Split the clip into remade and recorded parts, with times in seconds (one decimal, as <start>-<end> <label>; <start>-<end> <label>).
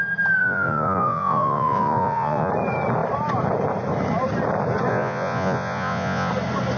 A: 0.0-0.4 recorded; 0.4-2.5 remade; 2.5-4.9 recorded; 4.9-6.3 remade; 6.3-6.8 recorded